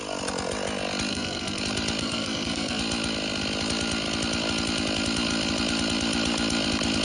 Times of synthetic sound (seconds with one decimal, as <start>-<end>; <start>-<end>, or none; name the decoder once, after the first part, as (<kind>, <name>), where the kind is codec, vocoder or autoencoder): 1.1-1.6 (codec, SNAC); 2.0-2.8